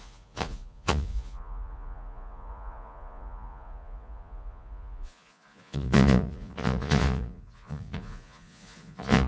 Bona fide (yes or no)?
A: no